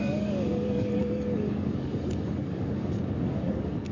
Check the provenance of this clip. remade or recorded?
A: remade